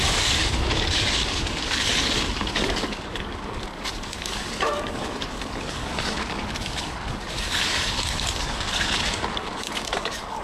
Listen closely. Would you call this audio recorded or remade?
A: remade